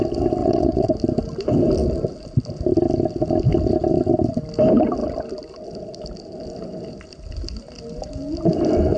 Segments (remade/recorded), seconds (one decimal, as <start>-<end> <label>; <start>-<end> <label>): 0.0-0.4 recorded; 0.4-0.9 remade; 0.9-9.0 recorded